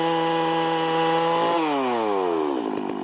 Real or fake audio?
real